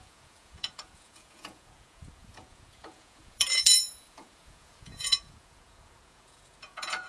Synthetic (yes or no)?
yes